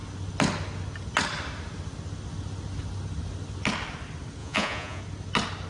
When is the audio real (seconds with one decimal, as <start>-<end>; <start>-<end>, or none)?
0.0-4.4; 5.0-5.7